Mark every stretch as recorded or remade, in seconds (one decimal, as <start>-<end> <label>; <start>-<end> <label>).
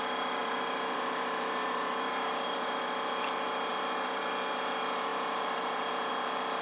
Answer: 0.0-0.4 recorded; 0.4-2.9 remade; 2.9-3.7 recorded; 3.7-4.2 remade; 4.2-5.1 recorded; 5.1-6.1 remade; 6.1-6.6 recorded